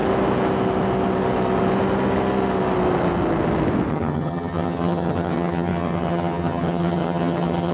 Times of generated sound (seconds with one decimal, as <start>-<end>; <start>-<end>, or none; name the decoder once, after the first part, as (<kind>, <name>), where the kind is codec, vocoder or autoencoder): 3.9-7.7 (vocoder, HiFi-GAN)